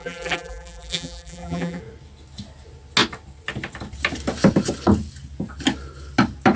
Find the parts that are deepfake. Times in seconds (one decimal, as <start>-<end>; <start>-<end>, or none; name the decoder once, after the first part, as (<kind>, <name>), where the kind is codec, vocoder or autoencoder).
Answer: 0.0-1.8 (vocoder, BigVGAN v2)